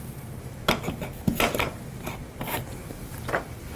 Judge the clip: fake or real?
real